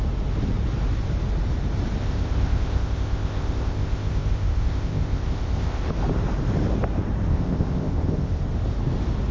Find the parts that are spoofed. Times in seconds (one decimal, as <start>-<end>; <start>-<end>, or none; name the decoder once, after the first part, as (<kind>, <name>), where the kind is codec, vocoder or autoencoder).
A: 2.0-5.9 (codec, ZipCodec); 7.3-8.4